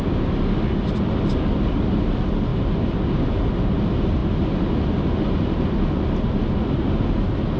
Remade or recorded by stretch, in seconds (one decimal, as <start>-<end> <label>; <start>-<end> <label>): 0.0-7.6 recorded

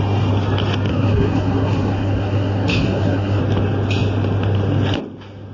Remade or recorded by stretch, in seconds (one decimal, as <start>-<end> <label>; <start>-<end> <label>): 0.0-0.9 recorded; 0.9-3.4 remade; 3.4-5.5 recorded

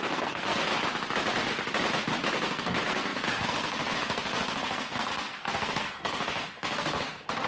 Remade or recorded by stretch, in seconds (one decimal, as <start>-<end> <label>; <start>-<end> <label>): 0.0-0.7 remade; 0.7-2.3 recorded; 2.3-7.5 remade

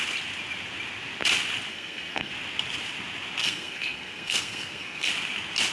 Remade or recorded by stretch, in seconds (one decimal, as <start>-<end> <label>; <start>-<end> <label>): 0.0-1.7 recorded; 1.7-2.3 remade; 2.3-3.4 recorded; 3.4-5.1 remade; 5.1-5.7 recorded

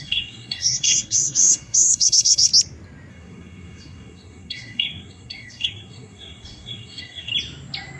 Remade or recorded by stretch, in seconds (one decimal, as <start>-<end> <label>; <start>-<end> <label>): 0.0-2.5 remade; 2.5-3.1 recorded; 3.1-7.3 remade; 7.3-8.0 recorded

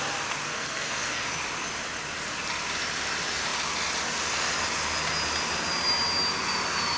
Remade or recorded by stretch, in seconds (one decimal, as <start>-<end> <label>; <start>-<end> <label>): 0.0-0.5 recorded; 0.5-1.2 remade; 1.2-7.0 recorded

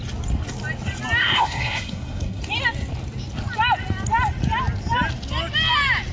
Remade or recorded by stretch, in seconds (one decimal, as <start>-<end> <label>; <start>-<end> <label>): 0.0-1.2 recorded; 1.2-2.4 remade; 2.4-6.1 recorded

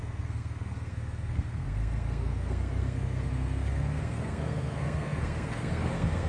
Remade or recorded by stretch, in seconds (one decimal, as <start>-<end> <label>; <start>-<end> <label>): 0.0-6.3 remade